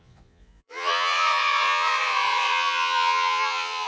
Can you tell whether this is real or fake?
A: fake